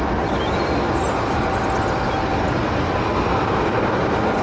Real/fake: real